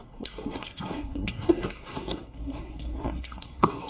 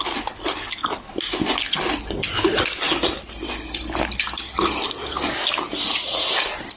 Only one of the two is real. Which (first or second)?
second